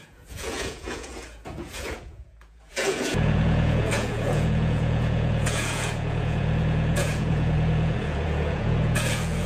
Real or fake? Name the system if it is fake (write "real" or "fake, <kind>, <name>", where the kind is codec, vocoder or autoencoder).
fake, vocoder, Vocos